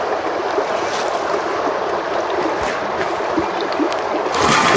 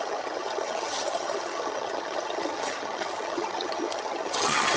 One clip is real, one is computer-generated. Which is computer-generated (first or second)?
second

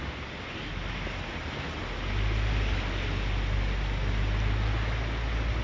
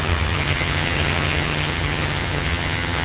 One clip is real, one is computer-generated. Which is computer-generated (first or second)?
second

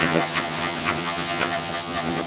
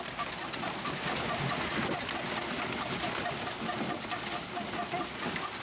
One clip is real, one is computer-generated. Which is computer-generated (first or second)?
first